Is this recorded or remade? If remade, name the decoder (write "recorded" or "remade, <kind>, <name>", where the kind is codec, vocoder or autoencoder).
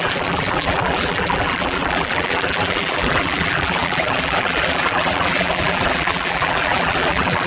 remade, vocoder, BigVGAN v2